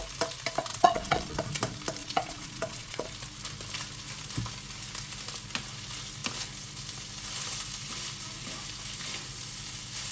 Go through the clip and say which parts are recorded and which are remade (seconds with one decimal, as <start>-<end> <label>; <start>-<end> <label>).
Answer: 0.0-0.7 recorded; 0.7-1.5 remade; 1.5-2.0 recorded; 2.0-3.1 remade; 3.1-10.1 recorded